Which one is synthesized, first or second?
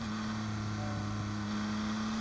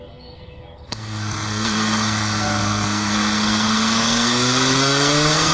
second